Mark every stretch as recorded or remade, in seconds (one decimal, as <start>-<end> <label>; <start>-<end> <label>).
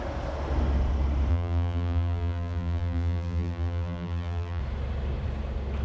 0.0-1.3 recorded; 1.3-4.6 remade; 4.6-5.8 recorded